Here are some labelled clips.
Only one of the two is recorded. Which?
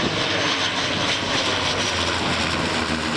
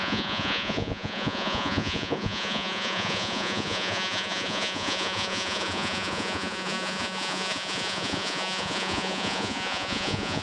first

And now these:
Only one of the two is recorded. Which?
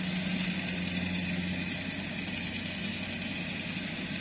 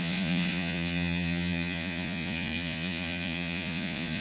first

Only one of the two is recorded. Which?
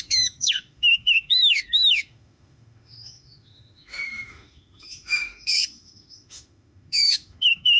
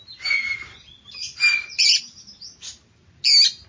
second